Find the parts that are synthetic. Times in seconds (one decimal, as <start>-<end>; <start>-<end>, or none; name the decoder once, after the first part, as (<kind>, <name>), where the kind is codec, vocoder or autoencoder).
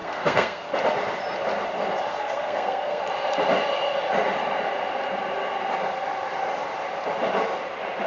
0.0-0.7 (codec, SNAC); 2.1-3.0